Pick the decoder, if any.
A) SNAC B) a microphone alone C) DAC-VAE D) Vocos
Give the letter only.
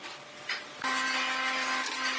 B